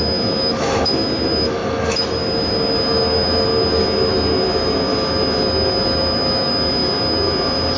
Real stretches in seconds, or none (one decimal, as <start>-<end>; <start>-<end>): none